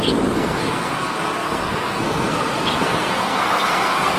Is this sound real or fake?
fake